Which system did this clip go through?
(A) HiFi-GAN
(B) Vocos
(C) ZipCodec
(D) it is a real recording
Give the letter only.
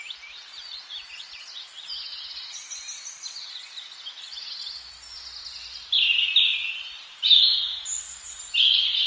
D